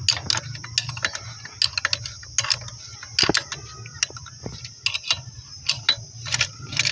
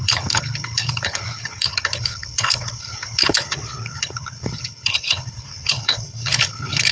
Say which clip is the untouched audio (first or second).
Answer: first